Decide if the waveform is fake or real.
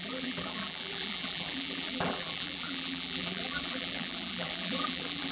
fake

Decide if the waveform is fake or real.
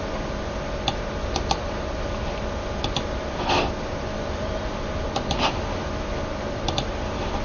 real